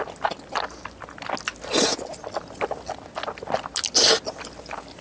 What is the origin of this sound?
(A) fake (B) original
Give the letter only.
B